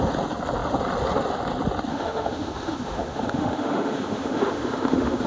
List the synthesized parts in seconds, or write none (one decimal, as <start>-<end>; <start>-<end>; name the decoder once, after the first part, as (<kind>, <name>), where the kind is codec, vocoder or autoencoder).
1.9-5.3 (autoencoder, DAC-VAE)